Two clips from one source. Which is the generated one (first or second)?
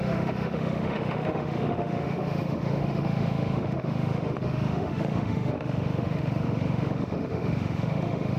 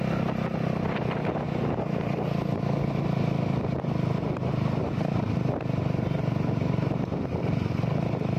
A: first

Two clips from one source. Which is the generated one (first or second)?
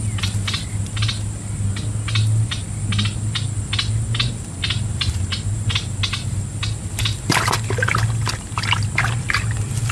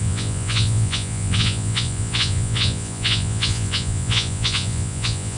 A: second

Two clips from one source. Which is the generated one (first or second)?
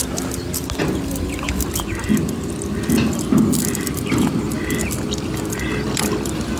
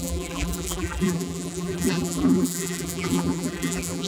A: second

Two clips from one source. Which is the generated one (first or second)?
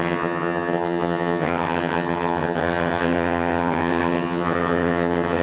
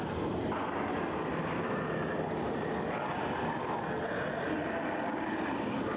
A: first